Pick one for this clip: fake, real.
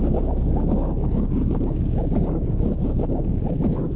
fake